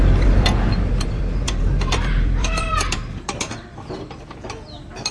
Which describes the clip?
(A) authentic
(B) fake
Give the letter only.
B